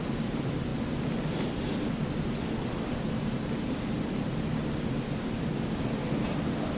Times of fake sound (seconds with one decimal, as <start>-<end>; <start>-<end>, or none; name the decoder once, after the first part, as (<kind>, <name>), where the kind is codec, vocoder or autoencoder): none